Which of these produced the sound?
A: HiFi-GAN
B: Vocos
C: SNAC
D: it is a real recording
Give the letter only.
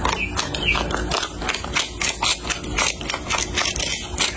D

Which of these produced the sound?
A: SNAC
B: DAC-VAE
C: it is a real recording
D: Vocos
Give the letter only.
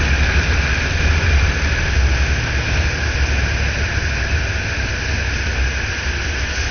C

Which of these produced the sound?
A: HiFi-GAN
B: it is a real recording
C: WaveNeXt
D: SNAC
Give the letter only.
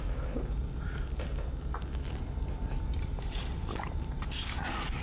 B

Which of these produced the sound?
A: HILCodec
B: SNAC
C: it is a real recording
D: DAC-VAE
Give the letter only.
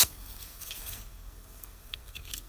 B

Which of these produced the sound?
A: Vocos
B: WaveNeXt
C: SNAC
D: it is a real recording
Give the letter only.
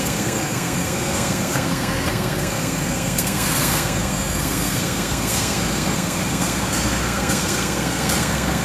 C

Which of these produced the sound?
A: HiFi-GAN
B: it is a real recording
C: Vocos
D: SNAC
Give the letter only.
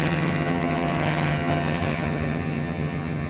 A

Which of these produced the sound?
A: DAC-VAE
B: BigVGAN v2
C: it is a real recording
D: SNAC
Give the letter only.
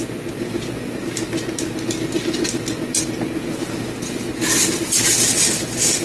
C